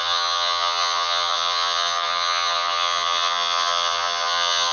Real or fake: fake